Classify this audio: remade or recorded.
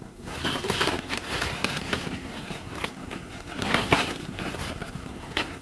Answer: remade